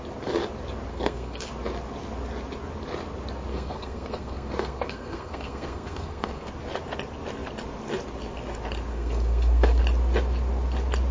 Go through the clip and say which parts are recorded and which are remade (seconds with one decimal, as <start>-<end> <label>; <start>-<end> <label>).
0.0-0.9 recorded; 0.9-1.5 remade; 1.5-3.5 recorded; 3.5-6.5 remade; 6.5-8.9 recorded; 8.9-9.8 remade; 9.8-11.1 recorded